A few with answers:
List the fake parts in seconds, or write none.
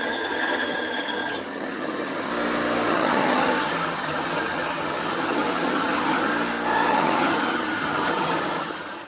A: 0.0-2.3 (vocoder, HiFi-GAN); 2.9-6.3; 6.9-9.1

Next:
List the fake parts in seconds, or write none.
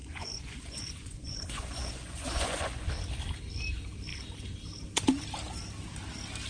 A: 0.0-2.9 (vocoder, Vocos)